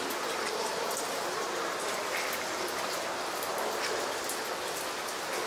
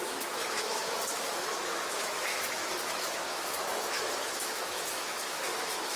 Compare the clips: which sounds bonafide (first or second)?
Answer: first